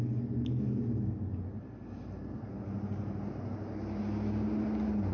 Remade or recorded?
recorded